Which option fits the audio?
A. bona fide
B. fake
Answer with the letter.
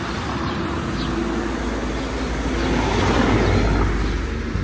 A